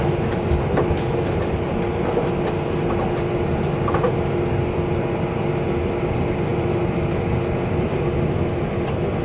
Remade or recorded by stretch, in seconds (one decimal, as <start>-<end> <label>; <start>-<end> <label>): 0.0-9.2 recorded